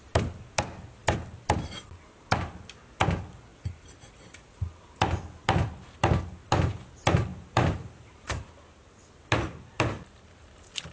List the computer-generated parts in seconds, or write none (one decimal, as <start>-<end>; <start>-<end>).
3.5-4.4; 7.3-8.5